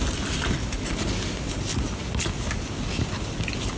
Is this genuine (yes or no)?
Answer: yes